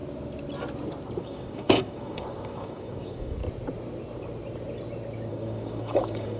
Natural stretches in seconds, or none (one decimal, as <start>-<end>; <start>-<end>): 0.0-1.2; 3.4-5.3